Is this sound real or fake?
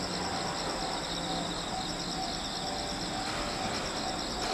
real